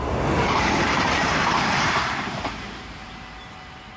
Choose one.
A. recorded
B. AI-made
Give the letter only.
B